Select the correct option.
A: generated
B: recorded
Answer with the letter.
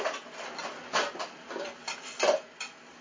B